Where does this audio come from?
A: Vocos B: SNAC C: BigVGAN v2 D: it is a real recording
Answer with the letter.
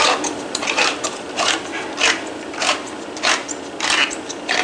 D